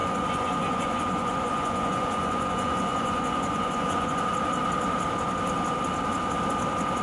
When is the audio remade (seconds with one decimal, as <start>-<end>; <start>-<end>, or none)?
0.0-4.2